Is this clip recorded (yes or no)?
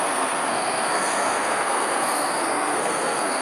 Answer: no